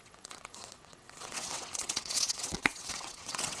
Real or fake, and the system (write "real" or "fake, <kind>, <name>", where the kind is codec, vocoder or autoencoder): fake, vocoder, WaveNeXt